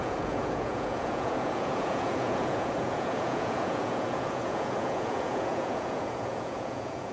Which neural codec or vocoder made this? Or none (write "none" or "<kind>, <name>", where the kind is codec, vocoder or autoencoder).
vocoder, Vocos